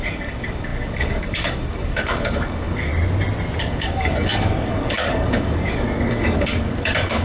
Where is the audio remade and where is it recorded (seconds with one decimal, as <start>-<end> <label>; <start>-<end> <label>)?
0.0-2.9 remade; 2.9-3.6 recorded; 3.6-7.2 remade